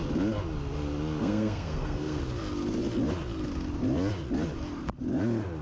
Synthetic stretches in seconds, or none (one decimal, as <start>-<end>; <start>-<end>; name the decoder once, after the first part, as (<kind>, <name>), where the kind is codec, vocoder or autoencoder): 1.2-2.2 (codec, SNAC)